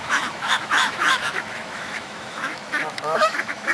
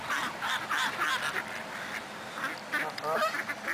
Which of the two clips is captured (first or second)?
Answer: second